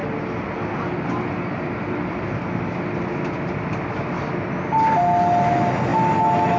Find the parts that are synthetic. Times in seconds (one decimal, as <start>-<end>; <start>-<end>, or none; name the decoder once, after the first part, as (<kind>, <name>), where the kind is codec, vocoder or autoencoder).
none